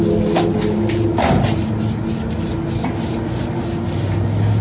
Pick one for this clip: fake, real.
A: real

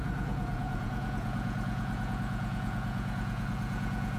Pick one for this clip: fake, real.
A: fake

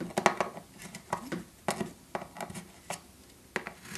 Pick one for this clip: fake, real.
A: real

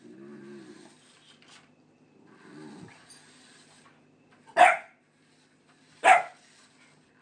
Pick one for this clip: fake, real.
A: real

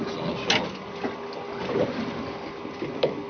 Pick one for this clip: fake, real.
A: real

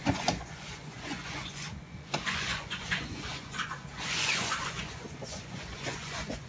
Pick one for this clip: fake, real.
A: fake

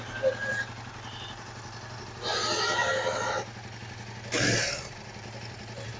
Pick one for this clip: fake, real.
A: real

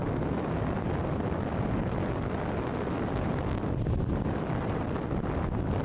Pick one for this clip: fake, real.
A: real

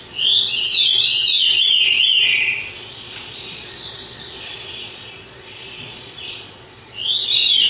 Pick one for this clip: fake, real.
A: fake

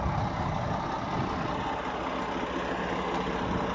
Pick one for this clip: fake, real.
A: real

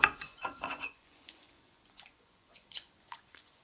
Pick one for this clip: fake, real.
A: fake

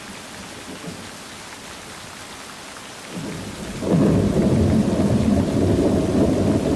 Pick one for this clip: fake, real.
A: real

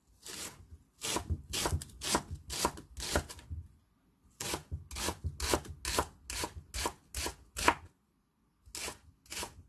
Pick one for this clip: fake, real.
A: real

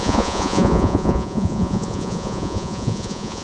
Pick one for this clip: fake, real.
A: fake